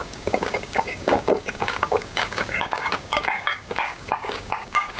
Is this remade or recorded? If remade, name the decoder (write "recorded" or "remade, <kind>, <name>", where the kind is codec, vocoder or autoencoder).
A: remade, codec, DAC